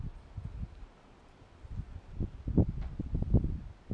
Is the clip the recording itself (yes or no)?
yes